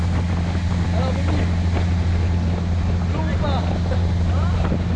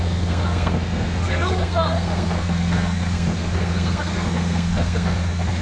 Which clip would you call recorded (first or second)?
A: first